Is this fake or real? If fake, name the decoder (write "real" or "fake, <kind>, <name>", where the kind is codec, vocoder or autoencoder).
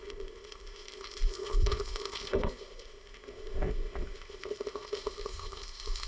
fake, codec, ZipCodec